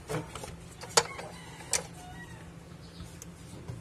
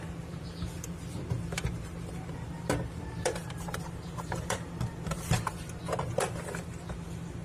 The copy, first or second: second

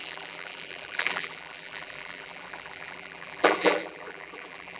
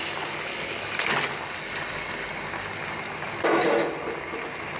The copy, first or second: first